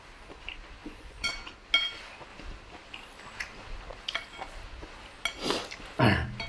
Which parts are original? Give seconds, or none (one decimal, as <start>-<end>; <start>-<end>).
0.0-0.8; 1.3-6.5